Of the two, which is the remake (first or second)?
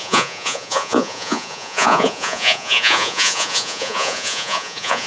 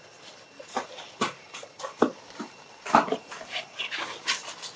first